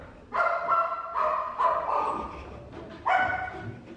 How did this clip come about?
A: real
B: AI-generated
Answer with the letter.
A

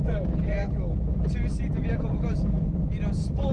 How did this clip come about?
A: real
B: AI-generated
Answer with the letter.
A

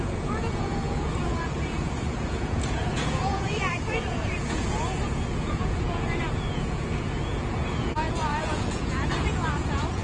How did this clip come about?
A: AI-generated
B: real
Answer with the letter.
A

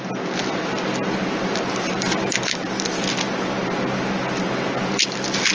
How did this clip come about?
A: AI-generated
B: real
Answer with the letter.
B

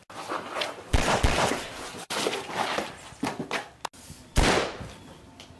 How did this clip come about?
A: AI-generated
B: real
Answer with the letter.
B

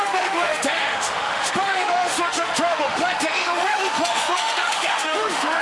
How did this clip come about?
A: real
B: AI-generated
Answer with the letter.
B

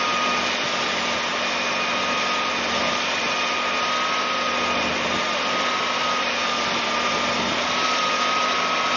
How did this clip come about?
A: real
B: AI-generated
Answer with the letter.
A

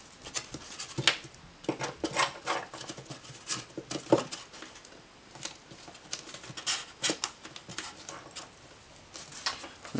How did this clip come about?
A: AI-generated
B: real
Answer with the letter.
B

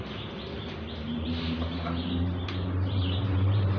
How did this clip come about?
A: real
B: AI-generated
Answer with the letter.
B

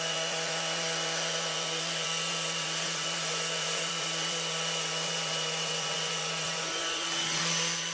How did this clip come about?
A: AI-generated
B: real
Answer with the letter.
A